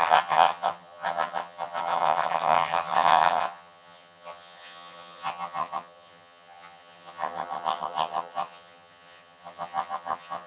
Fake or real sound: fake